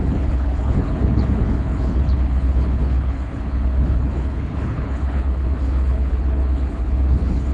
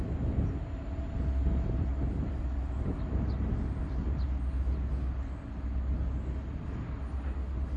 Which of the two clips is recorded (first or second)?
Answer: second